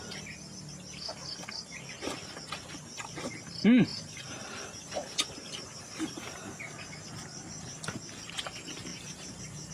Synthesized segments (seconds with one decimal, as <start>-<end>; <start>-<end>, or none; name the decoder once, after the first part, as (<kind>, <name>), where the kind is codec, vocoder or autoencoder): 3.9-6.4 (vocoder, BigVGAN v2); 8.9-9.7

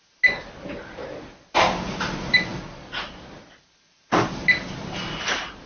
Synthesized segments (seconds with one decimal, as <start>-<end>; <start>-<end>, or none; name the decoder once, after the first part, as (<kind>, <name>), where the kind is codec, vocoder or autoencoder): none

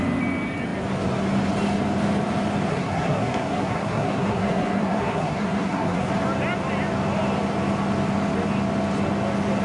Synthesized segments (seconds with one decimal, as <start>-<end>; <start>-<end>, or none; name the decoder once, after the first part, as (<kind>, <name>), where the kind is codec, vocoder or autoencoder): 2.7-6.1 (codec, SNAC)

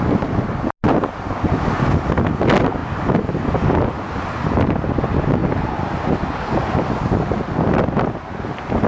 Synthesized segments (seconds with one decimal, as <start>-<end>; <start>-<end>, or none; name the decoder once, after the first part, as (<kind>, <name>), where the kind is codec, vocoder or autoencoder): none

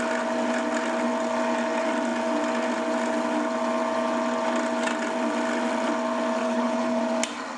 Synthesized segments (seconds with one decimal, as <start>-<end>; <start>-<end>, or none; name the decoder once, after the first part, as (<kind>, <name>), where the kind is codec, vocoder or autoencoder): 6.4-7.0 (codec, HILCodec)

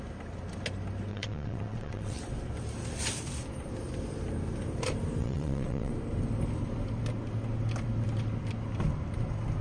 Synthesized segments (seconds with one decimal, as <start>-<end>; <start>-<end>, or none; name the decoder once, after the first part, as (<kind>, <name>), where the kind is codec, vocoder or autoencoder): 1.1-2.2 (vocoder, WaveNeXt); 5.2-5.9

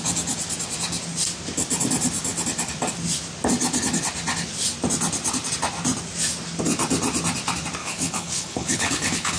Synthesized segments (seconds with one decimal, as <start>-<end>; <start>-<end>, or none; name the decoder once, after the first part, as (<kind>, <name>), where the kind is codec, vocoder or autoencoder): 7.8-9.4 (codec, HILCodec)